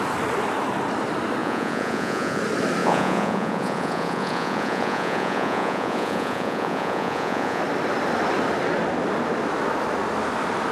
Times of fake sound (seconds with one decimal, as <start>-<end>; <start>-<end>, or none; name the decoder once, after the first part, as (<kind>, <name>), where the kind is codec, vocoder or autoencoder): 1.4-2.4 (vocoder, Vocos); 2.8-7.6